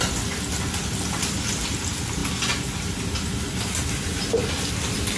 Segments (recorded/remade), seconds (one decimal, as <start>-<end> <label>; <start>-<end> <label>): 0.0-5.2 recorded